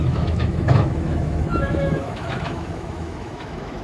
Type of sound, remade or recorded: remade